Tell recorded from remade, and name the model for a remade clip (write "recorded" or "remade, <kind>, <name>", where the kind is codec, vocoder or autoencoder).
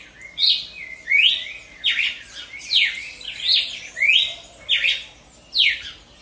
recorded